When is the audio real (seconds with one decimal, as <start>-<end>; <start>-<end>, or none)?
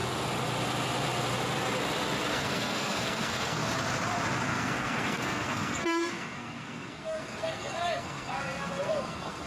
0.0-2.3; 3.7-4.5